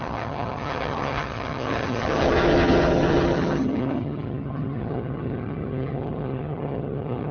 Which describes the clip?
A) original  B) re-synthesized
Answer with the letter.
B